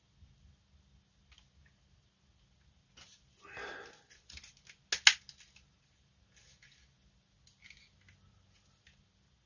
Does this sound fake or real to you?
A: real